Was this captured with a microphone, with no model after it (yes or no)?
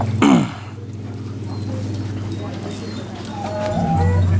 yes